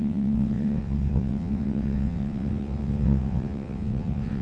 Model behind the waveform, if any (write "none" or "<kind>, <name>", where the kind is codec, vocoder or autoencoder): vocoder, WaveNeXt